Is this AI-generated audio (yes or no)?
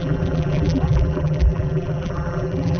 yes